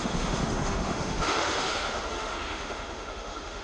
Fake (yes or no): yes